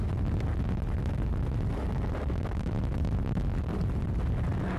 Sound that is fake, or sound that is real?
real